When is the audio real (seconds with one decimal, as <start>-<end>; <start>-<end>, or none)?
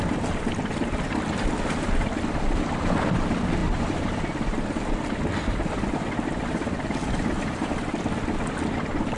0.0-3.6; 7.7-9.2